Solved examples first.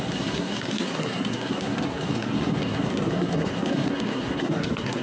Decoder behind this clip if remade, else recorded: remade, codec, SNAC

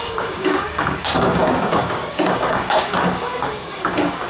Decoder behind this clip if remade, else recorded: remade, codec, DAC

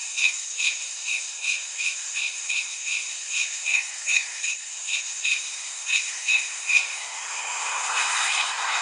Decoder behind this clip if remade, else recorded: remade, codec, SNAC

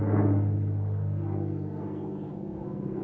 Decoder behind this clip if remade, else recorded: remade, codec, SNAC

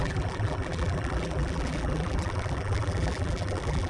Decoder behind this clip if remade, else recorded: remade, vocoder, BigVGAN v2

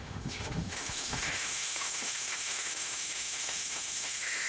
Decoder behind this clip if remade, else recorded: remade, autoencoder, DAC-VAE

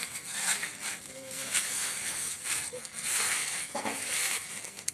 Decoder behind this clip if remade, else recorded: remade, codec, SNAC